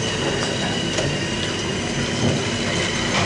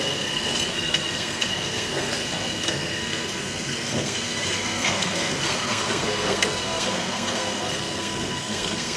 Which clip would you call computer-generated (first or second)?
second